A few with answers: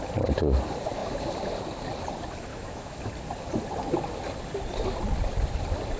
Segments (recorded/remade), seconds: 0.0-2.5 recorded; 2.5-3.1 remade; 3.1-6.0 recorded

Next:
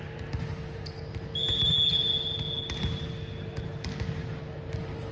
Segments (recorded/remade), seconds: 0.0-5.1 recorded

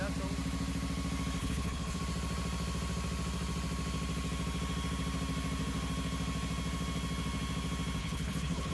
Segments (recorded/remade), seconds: 0.0-1.4 recorded; 1.4-2.0 remade; 2.0-8.0 recorded; 8.0-8.7 remade

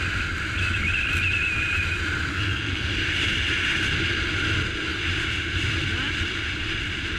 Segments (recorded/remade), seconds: 0.0-2.3 recorded; 2.3-2.9 remade; 2.9-7.2 recorded

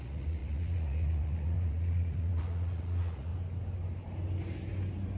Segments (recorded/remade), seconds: 0.0-3.3 remade; 3.3-5.2 recorded